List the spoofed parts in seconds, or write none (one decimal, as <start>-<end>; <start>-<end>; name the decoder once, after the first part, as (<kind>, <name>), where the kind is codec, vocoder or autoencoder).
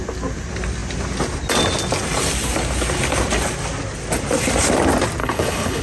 5.2-5.8 (codec, HILCodec)